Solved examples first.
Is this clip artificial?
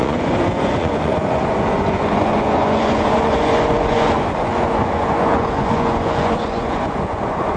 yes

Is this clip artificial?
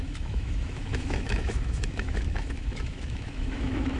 yes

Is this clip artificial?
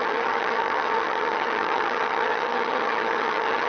yes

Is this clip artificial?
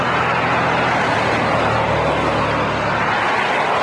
no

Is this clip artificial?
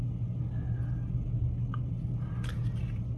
no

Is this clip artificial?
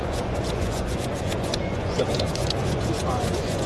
yes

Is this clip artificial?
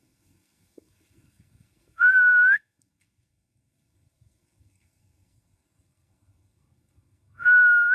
yes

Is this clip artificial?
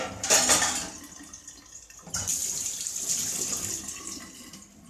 no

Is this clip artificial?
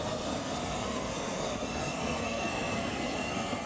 yes